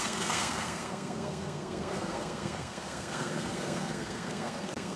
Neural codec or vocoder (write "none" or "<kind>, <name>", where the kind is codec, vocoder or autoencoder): codec, SNAC